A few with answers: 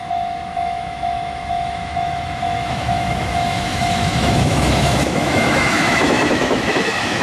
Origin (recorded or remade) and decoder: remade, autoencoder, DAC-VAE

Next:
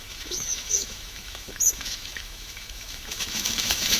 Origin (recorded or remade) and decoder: remade, autoencoder, DAC-VAE